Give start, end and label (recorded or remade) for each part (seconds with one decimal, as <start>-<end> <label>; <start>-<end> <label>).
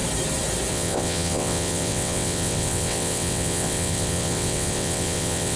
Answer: 0.0-0.7 recorded; 0.7-5.6 remade